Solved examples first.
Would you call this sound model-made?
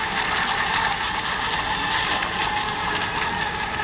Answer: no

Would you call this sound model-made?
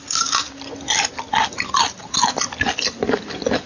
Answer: no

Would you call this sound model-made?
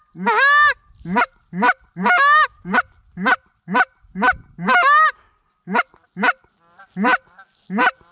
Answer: no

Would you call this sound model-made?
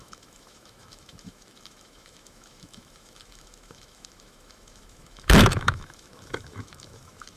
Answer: yes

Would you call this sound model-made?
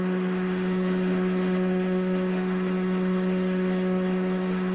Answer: yes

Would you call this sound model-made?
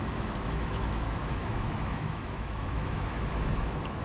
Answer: yes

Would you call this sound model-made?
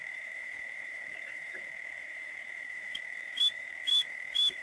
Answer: yes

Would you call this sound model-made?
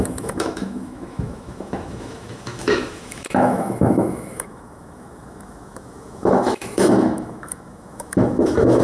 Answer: yes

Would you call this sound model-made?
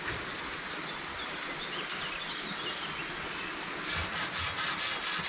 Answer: no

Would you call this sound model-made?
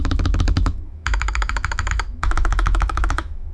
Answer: yes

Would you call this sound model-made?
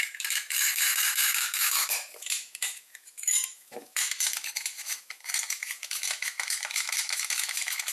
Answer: yes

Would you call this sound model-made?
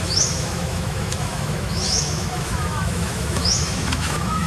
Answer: yes